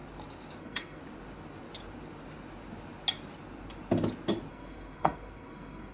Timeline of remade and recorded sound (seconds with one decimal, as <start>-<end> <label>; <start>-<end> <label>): 0.0-0.6 recorded; 0.6-1.0 remade; 1.0-4.5 recorded; 4.5-5.9 remade